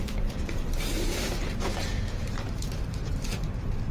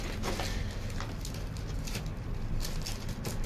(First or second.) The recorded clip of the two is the second